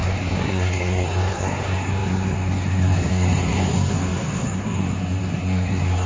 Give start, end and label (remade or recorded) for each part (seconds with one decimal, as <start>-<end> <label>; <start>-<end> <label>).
0.0-6.1 remade